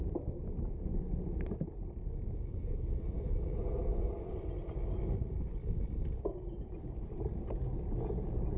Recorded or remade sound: recorded